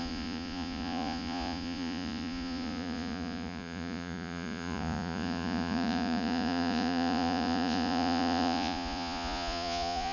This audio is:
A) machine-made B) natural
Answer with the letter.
A